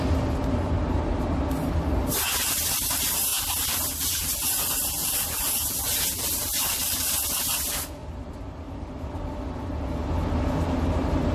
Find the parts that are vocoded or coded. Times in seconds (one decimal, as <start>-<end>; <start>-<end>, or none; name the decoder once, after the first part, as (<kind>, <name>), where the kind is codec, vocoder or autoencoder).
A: 3.3-7.1 (vocoder, BigVGAN v2); 8.0-9.2